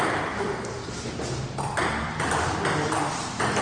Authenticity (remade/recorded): remade